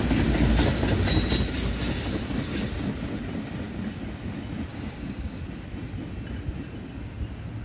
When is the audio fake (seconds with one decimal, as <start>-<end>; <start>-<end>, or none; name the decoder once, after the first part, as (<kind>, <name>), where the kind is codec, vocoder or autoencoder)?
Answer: 4.7-5.4 (codec, DAC)